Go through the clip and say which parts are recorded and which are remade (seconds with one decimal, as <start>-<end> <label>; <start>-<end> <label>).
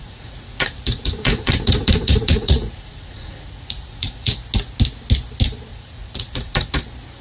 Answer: 0.0-4.3 remade; 4.3-5.7 recorded; 5.7-6.7 remade; 6.7-7.2 recorded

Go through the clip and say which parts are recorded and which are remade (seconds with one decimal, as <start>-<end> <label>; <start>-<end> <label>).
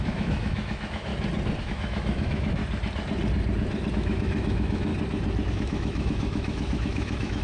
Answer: 0.0-1.1 remade; 1.1-1.6 recorded; 1.6-2.6 remade; 2.6-3.9 recorded; 3.9-4.9 remade; 4.9-5.5 recorded; 5.5-7.4 remade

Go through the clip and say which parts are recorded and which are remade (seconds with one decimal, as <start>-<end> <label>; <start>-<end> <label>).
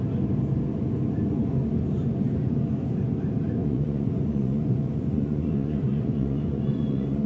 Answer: 0.0-3.6 recorded; 3.6-7.3 remade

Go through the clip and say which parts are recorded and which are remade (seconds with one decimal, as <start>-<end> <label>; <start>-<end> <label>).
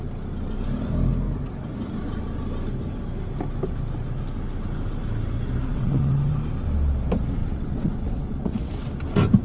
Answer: 0.0-5.7 recorded; 5.7-6.3 remade; 6.3-7.4 recorded; 7.4-8.9 remade; 8.9-9.4 recorded